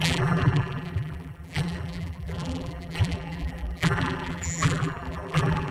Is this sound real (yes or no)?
no